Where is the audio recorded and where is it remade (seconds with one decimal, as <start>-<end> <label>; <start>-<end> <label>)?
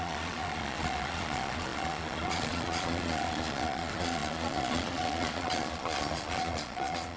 0.0-7.2 remade